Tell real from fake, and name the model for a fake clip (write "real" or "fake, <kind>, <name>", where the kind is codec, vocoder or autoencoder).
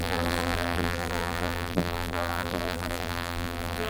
fake, vocoder, BigVGAN v2